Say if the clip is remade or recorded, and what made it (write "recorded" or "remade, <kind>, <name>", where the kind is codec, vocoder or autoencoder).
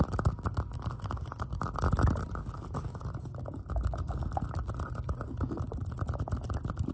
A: recorded